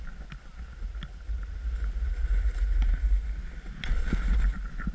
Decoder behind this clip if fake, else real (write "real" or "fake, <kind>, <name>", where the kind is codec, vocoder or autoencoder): real